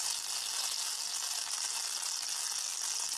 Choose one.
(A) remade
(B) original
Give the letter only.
B